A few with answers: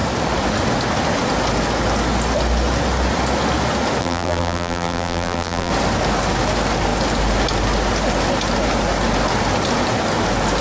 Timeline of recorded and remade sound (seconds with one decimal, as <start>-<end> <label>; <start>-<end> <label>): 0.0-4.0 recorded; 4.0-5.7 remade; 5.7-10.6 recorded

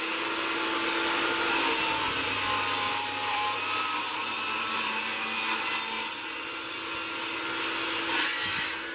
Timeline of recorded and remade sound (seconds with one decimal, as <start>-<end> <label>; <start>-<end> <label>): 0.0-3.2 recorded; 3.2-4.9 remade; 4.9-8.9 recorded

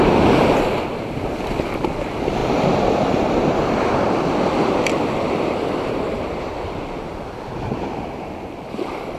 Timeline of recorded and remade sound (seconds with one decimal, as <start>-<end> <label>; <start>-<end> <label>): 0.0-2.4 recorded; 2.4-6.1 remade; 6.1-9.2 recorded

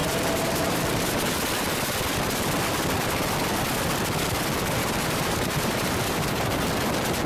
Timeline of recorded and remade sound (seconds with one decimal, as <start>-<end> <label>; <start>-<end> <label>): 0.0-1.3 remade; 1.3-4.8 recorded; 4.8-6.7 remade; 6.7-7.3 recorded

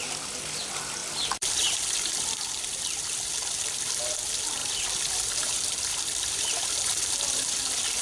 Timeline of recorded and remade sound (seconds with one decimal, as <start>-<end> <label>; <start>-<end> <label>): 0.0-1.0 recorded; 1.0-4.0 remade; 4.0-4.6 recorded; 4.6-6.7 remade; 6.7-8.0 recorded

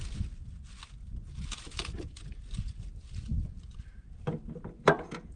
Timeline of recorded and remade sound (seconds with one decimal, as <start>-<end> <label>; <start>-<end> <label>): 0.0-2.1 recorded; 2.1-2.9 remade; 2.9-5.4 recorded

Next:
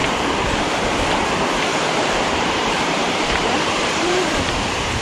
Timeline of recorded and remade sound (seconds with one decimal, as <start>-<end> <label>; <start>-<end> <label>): 0.0-1.7 recorded; 1.7-5.0 remade

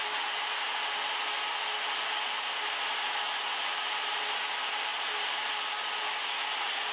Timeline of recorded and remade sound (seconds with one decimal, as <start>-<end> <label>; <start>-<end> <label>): 0.0-4.9 recorded; 4.9-5.5 remade; 5.5-6.9 recorded